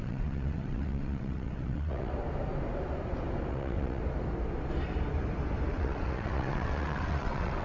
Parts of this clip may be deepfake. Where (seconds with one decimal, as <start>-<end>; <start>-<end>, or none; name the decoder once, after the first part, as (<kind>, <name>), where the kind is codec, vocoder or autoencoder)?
0.0-2.1 (vocoder, WaveNeXt); 3.5-4.0; 5.7-7.6